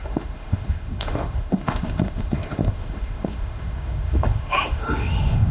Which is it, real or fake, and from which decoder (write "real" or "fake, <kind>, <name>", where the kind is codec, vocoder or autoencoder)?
fake, autoencoder, DAC-VAE